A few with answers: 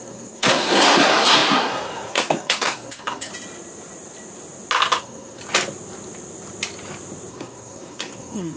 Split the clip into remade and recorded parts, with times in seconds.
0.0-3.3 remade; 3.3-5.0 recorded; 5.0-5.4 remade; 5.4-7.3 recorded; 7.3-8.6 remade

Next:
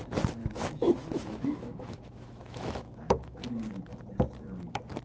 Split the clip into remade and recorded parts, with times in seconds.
0.0-0.4 recorded; 0.4-3.4 remade; 3.4-5.0 recorded

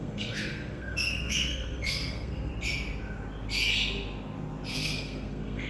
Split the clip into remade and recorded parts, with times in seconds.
0.0-2.5 remade; 2.5-4.7 recorded; 4.7-5.7 remade

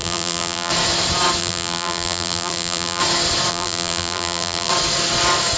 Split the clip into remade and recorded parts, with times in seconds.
0.0-0.7 remade; 0.7-1.4 recorded; 1.4-3.0 remade; 3.0-3.5 recorded; 3.5-4.7 remade; 4.7-5.6 recorded

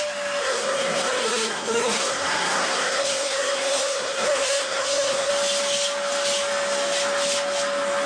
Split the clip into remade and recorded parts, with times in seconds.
0.0-0.4 recorded; 0.4-5.3 remade; 5.3-8.1 recorded

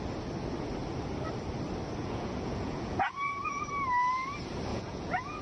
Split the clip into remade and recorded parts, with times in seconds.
0.0-2.0 recorded; 2.0-3.7 remade; 3.7-4.7 recorded; 4.7-5.4 remade

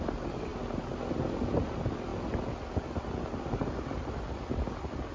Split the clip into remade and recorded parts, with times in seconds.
0.0-5.1 recorded